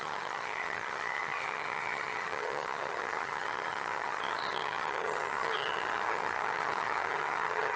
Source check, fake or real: fake